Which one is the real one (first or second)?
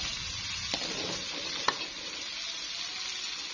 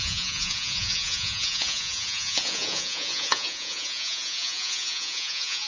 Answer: first